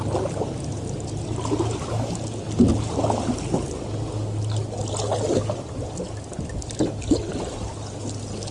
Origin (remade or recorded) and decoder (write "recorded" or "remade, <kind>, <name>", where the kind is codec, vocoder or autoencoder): recorded